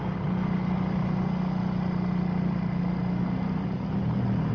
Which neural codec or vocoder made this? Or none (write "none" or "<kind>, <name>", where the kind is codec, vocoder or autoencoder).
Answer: none